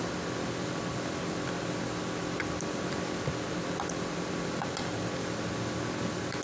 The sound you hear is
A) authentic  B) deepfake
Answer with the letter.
A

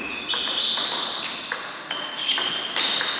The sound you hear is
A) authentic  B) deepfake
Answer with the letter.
A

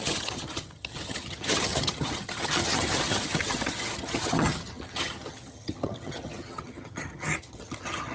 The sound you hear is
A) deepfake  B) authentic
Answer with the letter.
A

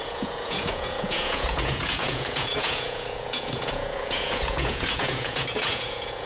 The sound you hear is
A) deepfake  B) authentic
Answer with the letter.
A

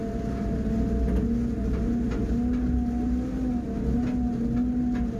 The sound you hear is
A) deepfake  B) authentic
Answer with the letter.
B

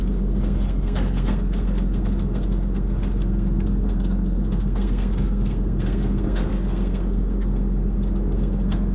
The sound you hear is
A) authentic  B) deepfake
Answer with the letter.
B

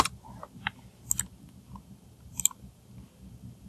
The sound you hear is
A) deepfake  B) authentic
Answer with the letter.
B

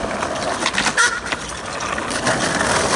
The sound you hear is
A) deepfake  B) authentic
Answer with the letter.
B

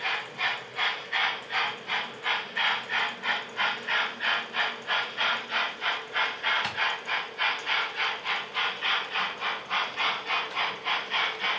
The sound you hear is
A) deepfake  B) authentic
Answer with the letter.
B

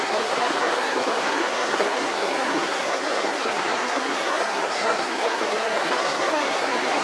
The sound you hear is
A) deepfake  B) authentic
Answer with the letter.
A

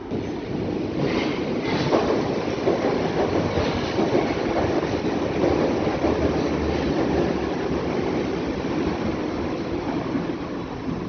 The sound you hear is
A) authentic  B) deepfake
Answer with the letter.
A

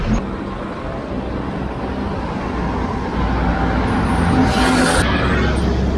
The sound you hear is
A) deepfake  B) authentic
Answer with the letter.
B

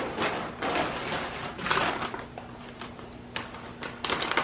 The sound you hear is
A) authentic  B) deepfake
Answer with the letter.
A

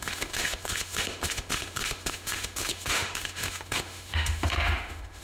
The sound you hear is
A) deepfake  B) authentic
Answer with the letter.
A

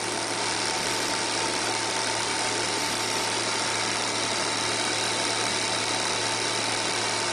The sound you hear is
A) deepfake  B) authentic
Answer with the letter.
B